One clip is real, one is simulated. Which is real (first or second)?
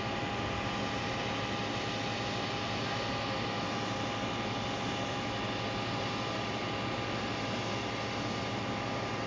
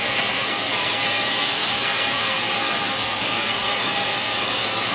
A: first